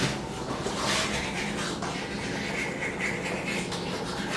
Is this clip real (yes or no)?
yes